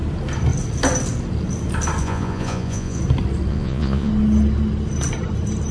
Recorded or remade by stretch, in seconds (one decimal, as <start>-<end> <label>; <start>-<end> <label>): 0.0-2.0 recorded; 2.0-3.0 remade; 3.0-3.5 recorded; 3.5-4.1 remade; 4.1-5.7 recorded